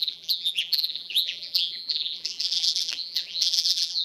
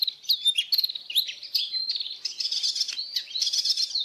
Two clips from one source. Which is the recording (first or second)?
second